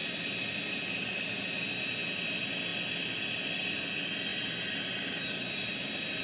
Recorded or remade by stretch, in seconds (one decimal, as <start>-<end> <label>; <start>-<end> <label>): 0.0-6.2 recorded